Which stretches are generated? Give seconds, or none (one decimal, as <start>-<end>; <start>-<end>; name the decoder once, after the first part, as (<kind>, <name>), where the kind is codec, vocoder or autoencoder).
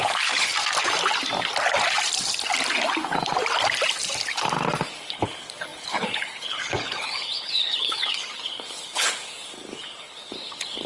0.0-0.5 (codec, HILCodec); 4.8-10.9